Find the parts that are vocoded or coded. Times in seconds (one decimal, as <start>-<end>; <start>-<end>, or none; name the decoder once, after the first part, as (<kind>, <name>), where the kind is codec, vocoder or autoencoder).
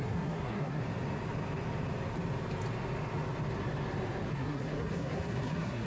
0.0-0.8 (codec, SNAC); 4.3-5.9